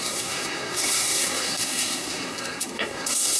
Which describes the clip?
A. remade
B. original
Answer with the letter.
A